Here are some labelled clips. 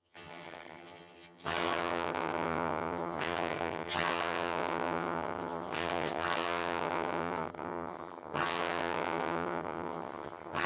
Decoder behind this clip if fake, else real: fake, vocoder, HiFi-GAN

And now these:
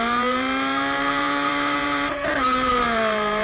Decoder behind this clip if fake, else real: fake, vocoder, BigVGAN v2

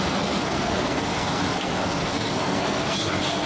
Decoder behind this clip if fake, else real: fake, codec, SNAC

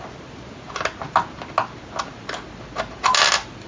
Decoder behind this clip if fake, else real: real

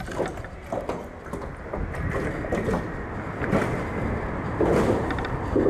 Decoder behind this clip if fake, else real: real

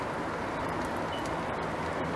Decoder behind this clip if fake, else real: real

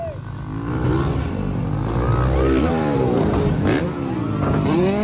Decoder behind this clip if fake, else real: real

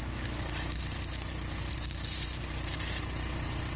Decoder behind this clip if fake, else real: fake, vocoder, BigVGAN v2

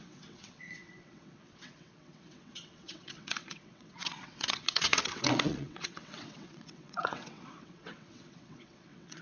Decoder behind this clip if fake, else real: fake, vocoder, WaveNeXt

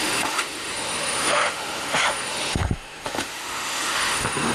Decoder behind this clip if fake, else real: fake, autoencoder, DAC-VAE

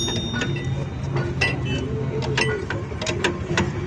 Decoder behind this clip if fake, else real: real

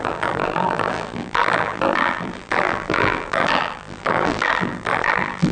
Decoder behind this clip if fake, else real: fake, vocoder, BigVGAN v2